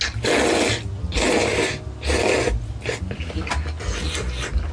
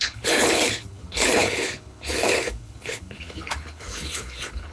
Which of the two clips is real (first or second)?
first